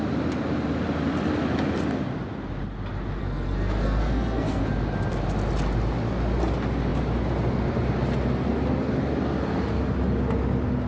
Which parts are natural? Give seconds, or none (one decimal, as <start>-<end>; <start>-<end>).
0.0-3.2; 4.6-10.9